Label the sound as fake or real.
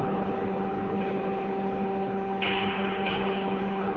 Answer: fake